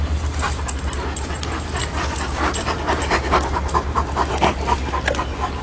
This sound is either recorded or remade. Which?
recorded